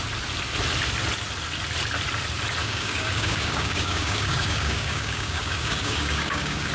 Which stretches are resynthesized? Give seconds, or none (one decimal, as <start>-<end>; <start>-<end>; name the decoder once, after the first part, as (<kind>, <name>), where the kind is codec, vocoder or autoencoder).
2.6-6.7 (codec, DAC)